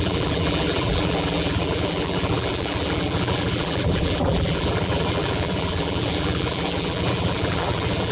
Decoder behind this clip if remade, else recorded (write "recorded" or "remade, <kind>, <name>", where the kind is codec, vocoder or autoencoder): remade, vocoder, BigVGAN v2